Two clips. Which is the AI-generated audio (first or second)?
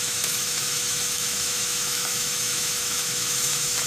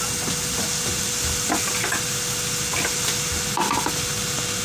first